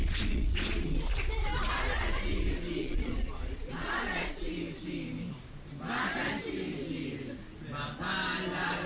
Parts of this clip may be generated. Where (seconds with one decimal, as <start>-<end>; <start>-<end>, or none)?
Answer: 0.0-1.0; 2.8-4.4

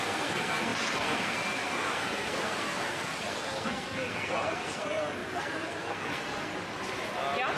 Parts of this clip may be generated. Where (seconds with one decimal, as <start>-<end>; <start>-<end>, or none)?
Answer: 0.0-6.5

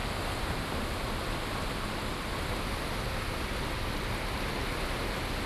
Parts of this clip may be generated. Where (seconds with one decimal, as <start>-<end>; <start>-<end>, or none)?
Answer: none

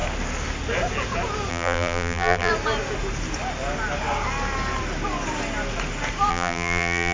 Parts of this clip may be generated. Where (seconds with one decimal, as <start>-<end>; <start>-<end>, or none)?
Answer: 1.5-2.5; 6.3-7.1

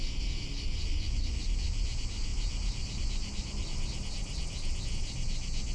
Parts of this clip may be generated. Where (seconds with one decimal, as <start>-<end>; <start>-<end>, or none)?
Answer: 0.9-1.4

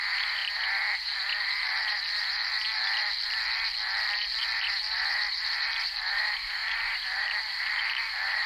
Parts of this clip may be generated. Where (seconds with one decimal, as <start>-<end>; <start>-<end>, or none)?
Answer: 0.0-0.4; 1.4-2.5; 4.6-8.5

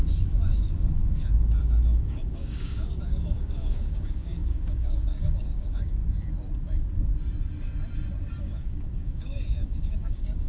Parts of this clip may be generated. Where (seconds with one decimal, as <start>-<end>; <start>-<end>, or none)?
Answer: 0.0-6.0; 8.4-10.5